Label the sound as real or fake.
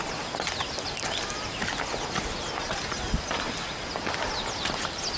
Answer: real